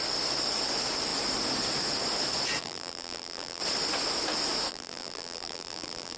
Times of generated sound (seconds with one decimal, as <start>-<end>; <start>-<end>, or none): 2.6-3.6; 4.7-6.2